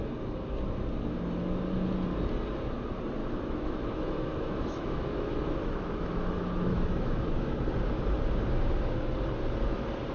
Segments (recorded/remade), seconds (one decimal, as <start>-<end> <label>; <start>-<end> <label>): 0.0-3.2 recorded; 3.2-7.7 remade; 7.7-10.1 recorded